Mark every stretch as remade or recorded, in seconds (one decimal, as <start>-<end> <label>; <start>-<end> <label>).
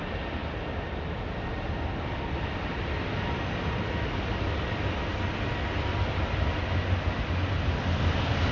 0.0-8.5 recorded